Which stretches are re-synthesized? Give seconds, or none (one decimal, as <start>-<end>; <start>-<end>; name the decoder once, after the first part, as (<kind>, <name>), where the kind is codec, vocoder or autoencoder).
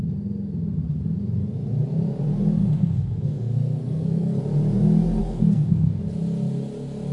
2.6-4.4 (codec, SNAC); 5.2-6.0